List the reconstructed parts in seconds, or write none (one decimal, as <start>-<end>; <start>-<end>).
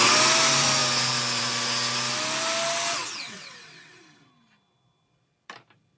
3.0-4.0